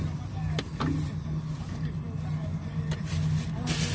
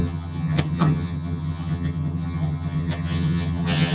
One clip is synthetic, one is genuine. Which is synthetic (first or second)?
second